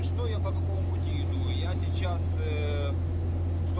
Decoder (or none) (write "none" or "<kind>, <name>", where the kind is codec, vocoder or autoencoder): none